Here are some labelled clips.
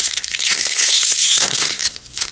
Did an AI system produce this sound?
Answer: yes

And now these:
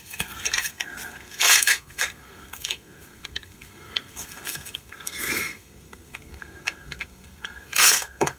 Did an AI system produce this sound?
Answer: yes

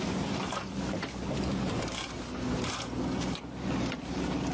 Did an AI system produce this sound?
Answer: no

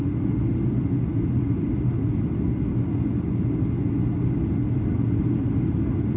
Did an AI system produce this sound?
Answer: no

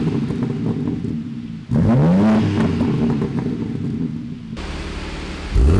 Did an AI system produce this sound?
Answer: no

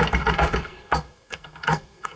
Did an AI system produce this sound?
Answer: yes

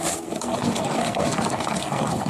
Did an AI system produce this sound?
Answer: yes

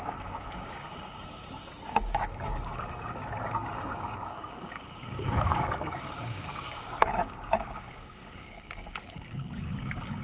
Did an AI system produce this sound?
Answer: yes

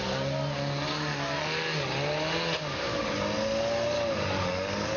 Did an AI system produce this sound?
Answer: no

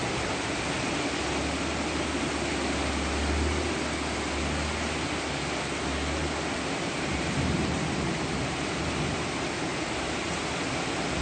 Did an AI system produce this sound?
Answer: no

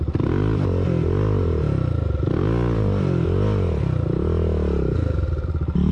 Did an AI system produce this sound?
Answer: no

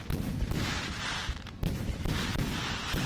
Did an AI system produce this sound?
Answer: yes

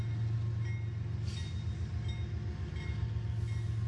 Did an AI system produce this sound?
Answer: no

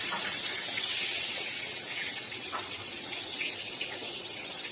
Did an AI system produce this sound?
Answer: yes